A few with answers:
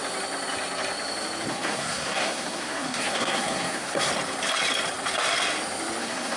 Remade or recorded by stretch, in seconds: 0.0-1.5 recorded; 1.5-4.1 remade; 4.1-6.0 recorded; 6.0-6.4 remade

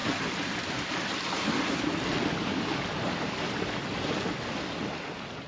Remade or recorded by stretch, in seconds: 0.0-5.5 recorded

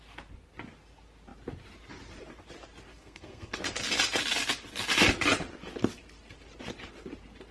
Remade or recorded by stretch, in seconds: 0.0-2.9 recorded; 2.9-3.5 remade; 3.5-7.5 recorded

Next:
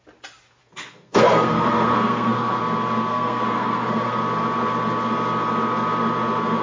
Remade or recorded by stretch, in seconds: 0.0-0.6 recorded; 0.6-2.6 remade; 2.6-3.1 recorded; 3.1-4.2 remade; 4.2-6.6 recorded

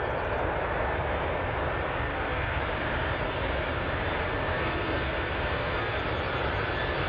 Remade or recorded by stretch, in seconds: 0.0-2.1 recorded; 2.1-2.6 remade; 2.6-4.5 recorded; 4.5-6.0 remade; 6.0-7.1 recorded